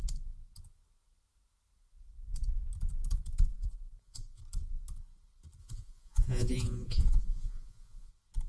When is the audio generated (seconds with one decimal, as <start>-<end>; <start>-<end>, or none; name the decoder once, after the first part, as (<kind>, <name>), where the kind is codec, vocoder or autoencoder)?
3.5-4.4 (vocoder, Vocos); 5.6-8.1